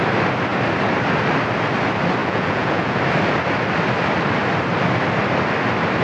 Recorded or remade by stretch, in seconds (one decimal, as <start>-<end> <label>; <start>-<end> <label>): 0.0-2.2 recorded; 2.2-3.0 remade; 3.0-6.0 recorded